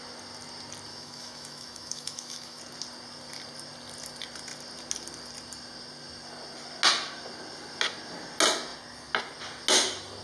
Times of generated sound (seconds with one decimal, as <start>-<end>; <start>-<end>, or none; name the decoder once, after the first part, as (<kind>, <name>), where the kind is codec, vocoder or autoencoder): 0.9-2.6 (autoencoder, DAC-VAE)